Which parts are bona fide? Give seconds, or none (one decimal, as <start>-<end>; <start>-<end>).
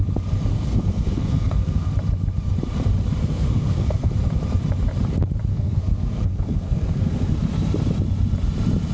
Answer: 0.0-0.5; 1.9-3.2; 4.1-5.5; 7.4-8.9